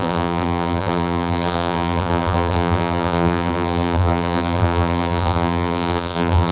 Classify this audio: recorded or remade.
remade